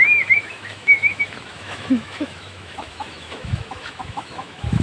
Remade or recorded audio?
remade